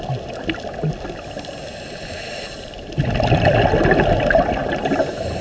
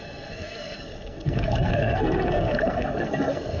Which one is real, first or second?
first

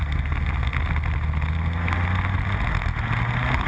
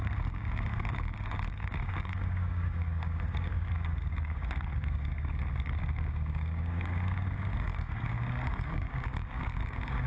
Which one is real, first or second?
first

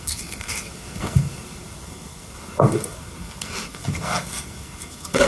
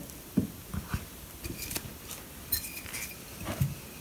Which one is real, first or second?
second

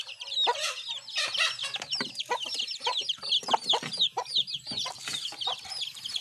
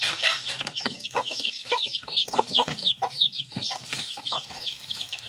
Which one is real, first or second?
first